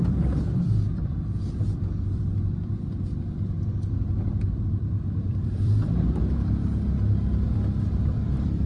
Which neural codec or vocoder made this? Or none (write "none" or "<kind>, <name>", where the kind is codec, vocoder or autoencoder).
vocoder, BigVGAN v2